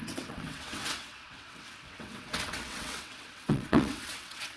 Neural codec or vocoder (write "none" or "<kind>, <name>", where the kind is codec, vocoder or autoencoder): vocoder, WaveNeXt